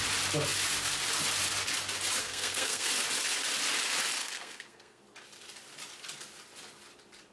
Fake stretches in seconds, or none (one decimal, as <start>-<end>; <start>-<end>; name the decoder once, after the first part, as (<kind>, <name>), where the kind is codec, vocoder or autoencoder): 2.2-2.9 (codec, SNAC); 4.2-5.0